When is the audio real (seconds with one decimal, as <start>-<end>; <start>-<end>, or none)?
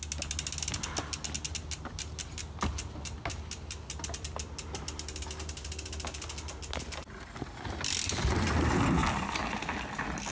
0.0-10.3